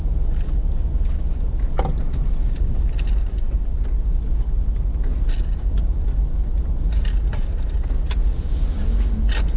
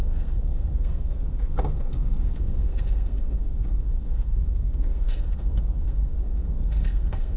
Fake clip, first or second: second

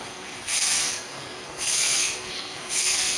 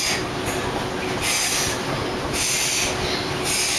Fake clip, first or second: first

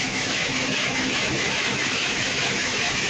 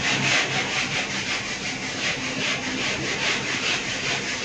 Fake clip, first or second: first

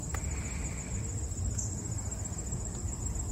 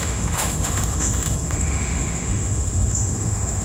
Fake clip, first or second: second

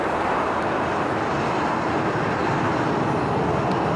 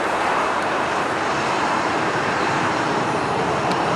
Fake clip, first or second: second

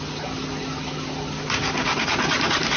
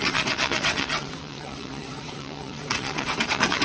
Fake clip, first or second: second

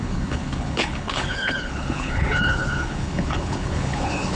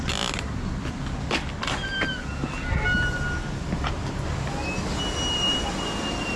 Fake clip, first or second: first